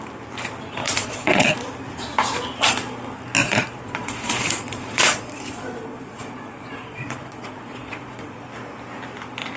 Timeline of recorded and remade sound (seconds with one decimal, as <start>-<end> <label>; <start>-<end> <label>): 0.0-0.8 recorded; 0.8-1.5 remade; 1.5-3.4 recorded; 3.4-8.5 remade; 8.5-9.6 recorded

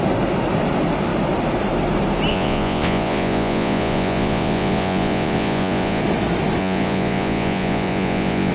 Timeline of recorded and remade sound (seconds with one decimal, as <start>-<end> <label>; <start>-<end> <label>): 0.0-2.3 recorded; 2.3-6.0 remade; 6.0-6.6 recorded; 6.6-8.5 remade

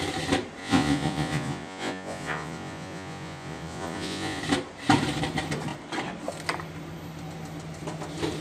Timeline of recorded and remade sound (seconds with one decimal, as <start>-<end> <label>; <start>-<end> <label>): 0.0-0.6 recorded; 0.6-4.4 remade; 4.4-8.4 recorded

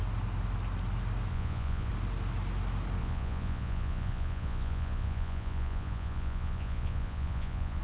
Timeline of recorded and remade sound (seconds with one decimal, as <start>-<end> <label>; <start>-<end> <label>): 0.0-1.3 recorded; 1.3-1.9 remade; 1.9-3.0 recorded; 3.0-7.8 remade

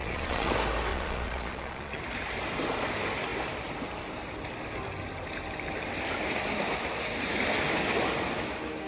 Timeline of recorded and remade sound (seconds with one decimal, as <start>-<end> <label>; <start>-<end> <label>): 0.0-0.5 remade; 0.5-0.9 recorded; 0.9-2.0 remade; 2.0-8.9 recorded

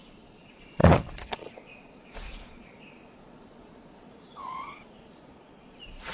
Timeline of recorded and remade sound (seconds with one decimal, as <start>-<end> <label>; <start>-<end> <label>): 0.0-6.1 remade

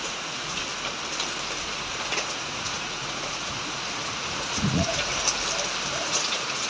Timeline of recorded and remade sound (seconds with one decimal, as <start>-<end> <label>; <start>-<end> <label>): 0.0-0.6 remade; 0.6-1.6 recorded; 1.6-5.1 remade; 5.1-6.0 recorded; 6.0-6.7 remade